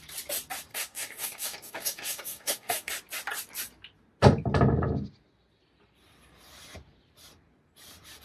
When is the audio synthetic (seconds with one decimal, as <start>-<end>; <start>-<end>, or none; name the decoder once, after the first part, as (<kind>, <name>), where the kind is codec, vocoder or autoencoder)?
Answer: 0.7-2.9 (codec, DAC)